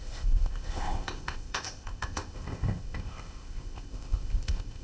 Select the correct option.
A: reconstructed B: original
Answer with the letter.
A